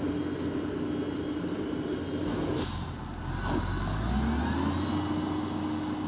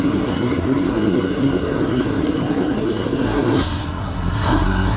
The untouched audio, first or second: first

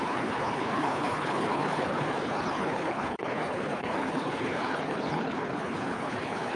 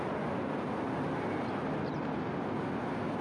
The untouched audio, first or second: second